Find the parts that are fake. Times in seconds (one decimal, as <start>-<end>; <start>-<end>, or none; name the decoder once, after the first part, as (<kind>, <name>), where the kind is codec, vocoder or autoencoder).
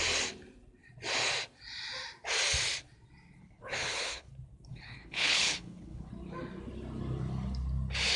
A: 3.4-4.3 (codec, HILCodec); 4.7-6.1